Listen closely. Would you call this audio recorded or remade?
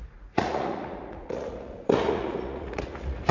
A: remade